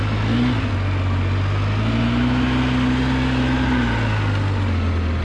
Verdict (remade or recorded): recorded